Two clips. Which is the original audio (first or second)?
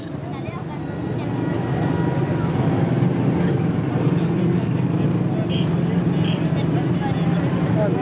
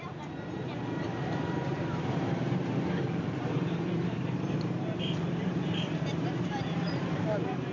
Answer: first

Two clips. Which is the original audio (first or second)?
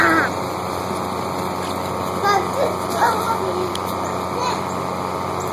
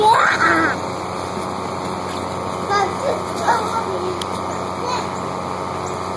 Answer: second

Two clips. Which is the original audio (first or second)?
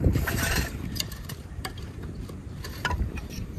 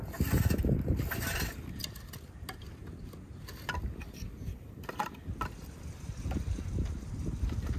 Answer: second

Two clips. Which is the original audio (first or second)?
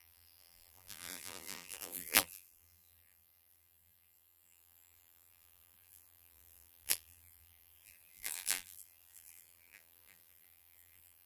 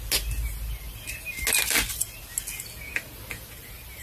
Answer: second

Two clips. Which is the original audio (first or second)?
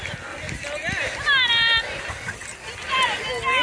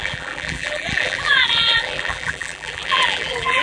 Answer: first